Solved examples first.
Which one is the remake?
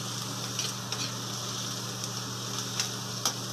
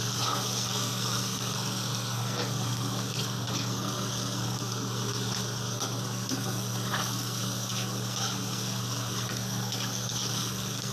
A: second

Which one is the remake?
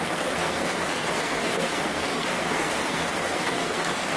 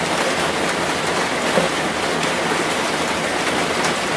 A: first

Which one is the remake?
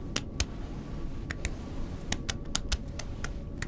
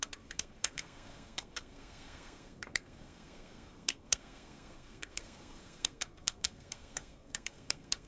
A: second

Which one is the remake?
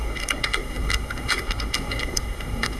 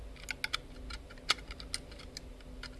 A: first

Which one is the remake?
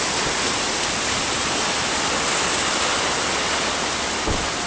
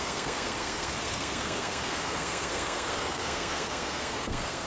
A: second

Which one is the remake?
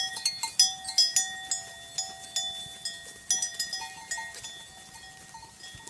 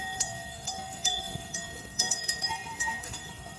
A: second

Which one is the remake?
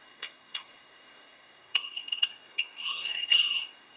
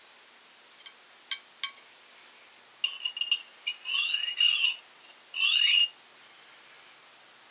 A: first